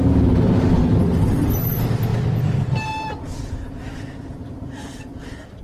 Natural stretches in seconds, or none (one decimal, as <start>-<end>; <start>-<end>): 0.0-5.6

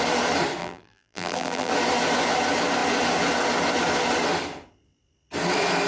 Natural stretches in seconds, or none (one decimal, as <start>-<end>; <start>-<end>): 0.0-0.6; 1.7-5.9

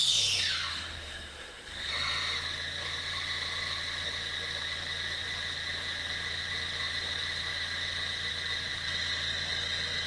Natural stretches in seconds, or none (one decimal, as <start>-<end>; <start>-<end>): 0.0-0.7; 1.9-10.1

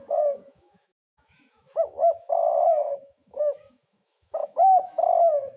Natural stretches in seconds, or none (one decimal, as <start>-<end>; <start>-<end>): none

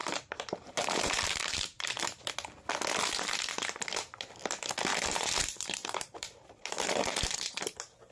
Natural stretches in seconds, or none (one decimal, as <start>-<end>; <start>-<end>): 2.2-4.9; 7.6-8.1

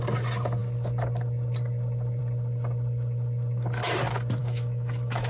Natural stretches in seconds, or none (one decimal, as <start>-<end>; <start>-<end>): 0.0-4.4

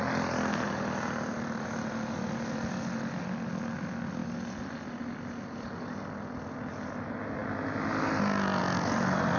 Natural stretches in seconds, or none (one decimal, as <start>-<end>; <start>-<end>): 0.0-9.4

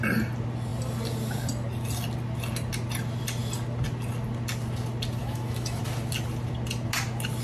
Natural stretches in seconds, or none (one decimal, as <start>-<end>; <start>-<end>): 0.0-5.2; 5.8-7.4